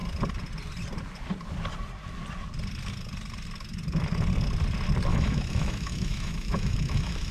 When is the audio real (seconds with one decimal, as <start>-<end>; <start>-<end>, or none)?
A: 0.0-5.1